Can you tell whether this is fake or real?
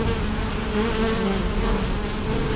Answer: real